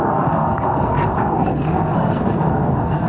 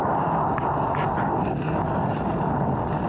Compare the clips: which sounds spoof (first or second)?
first